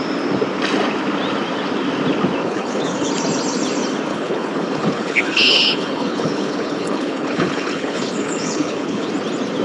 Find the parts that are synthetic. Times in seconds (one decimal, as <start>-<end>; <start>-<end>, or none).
2.4-3.1; 4.1-9.1